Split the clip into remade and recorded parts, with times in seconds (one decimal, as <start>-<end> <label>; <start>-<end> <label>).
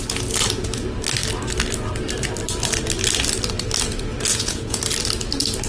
0.0-4.3 recorded; 4.3-4.8 remade; 4.8-5.7 recorded